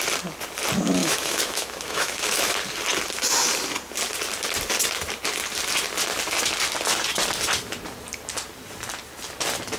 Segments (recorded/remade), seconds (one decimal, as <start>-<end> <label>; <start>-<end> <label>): 0.0-1.0 recorded; 1.0-2.5 remade; 2.5-9.8 recorded